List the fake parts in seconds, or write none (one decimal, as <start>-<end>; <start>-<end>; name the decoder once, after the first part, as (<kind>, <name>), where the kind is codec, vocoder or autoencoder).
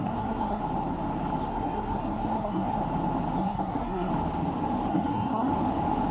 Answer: 0.0-0.6 (codec, SNAC); 1.5-2.8; 3.4-4.1; 4.9-5.5